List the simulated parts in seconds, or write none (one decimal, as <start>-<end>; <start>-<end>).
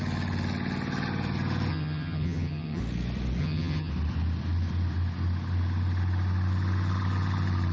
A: 1.7-2.8; 3.4-3.9